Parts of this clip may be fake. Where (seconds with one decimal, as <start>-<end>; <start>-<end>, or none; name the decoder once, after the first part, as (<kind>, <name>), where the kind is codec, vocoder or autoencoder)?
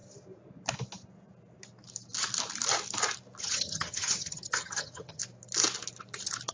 3.4-5.2 (vocoder, HiFi-GAN)